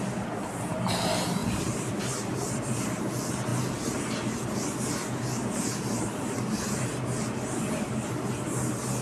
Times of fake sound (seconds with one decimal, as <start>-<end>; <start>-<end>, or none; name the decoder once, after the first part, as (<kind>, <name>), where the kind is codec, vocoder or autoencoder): 1.4-3.0 (vocoder, BigVGAN v2)